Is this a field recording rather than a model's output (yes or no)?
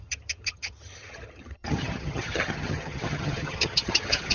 no